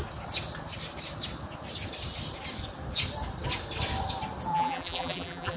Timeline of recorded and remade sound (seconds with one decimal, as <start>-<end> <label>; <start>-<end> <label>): 0.0-4.5 recorded; 4.5-5.6 remade